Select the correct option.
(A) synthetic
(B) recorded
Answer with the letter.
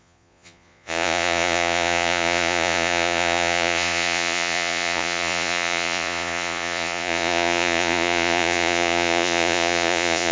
A